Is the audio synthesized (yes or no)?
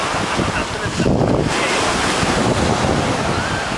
no